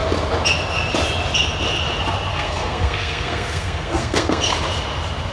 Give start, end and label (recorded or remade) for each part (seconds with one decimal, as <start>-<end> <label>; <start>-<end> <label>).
0.0-2.3 recorded; 2.3-4.4 remade; 4.4-5.3 recorded